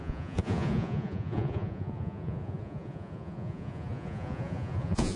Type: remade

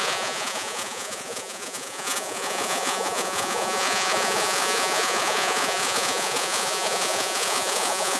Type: remade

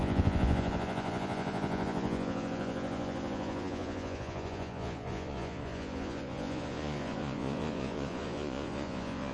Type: remade